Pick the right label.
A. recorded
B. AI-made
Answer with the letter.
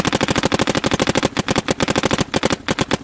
A